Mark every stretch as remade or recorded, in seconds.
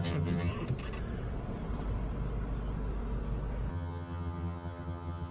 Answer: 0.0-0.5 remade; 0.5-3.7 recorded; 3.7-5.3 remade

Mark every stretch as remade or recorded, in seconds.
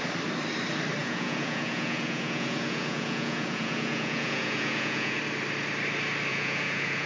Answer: 0.0-1.0 recorded; 1.0-5.2 remade; 5.2-6.3 recorded; 6.3-7.1 remade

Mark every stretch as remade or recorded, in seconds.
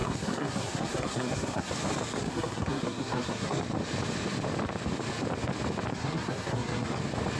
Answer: 0.0-1.7 remade; 1.7-2.2 recorded; 2.2-3.6 remade; 3.6-5.9 recorded; 5.9-7.0 remade; 7.0-7.4 recorded